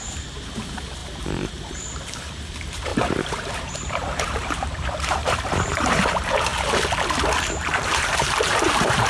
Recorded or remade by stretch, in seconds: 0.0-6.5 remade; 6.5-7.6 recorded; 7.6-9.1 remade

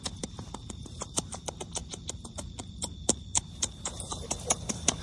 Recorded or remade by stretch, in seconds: 0.0-5.0 remade

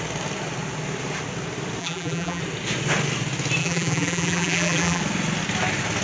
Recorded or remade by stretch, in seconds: 0.0-1.8 recorded; 1.8-2.4 remade; 2.4-3.6 recorded; 3.6-5.0 remade; 5.0-6.0 recorded

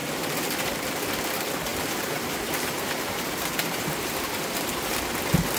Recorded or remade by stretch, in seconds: 0.0-1.7 recorded; 1.7-5.0 remade; 5.0-5.6 recorded

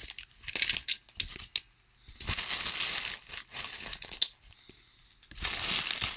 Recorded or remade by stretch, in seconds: 0.0-6.2 recorded

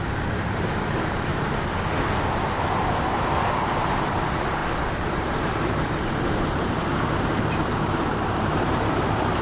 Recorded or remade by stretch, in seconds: 0.0-1.3 remade; 1.3-3.5 recorded; 3.5-9.4 remade

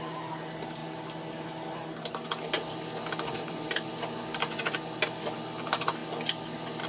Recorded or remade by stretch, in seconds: 0.0-6.9 recorded